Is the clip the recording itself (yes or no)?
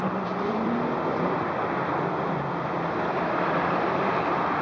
no